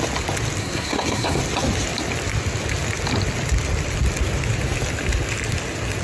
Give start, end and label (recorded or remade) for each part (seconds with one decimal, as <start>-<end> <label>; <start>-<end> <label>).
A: 0.0-0.6 recorded; 0.6-1.4 remade; 1.4-6.0 recorded